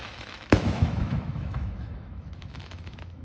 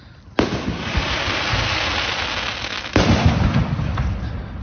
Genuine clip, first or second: second